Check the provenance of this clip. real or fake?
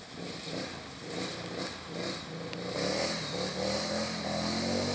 real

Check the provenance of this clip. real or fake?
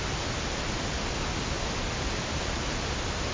real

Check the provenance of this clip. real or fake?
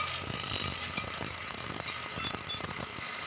real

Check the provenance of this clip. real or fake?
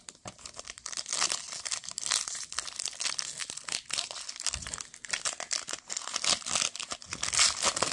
real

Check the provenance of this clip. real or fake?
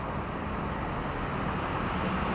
real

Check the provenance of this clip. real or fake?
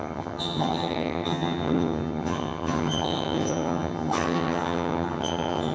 fake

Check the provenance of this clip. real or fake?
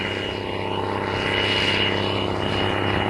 real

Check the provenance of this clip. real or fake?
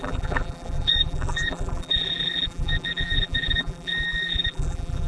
fake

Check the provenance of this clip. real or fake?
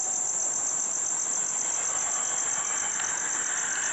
real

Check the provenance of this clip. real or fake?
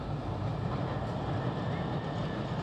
real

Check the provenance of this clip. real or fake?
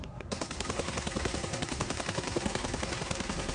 fake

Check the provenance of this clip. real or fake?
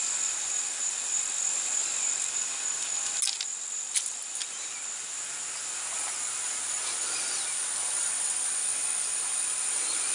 real